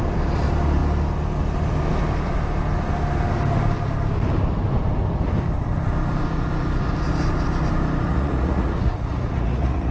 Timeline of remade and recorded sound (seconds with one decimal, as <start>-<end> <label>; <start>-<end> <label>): 0.0-8.1 recorded; 8.1-9.9 remade